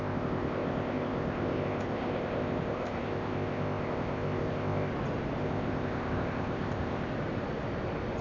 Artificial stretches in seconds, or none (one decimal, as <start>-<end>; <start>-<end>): 0.0-4.9; 5.4-7.1